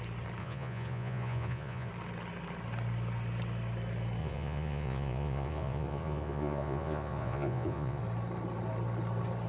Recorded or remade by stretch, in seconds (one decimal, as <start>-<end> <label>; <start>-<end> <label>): 0.0-0.4 recorded; 0.4-1.9 remade; 1.9-4.2 recorded; 4.2-8.0 remade; 8.0-9.5 recorded